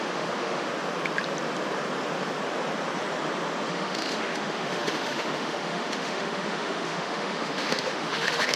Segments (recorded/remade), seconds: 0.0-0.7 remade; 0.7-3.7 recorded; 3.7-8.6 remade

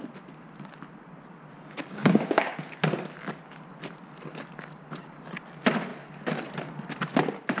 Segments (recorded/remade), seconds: 0.0-1.8 recorded; 1.8-2.7 remade; 2.7-7.6 recorded

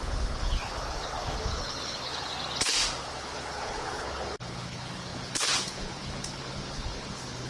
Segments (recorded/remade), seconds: 0.0-2.3 remade; 2.3-3.0 recorded; 3.0-7.5 remade

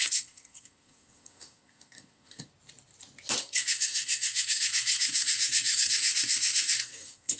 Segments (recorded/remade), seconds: 0.0-2.5 remade; 2.5-3.4 recorded; 3.4-7.4 remade